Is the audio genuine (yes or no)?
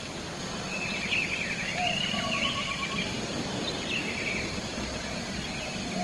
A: yes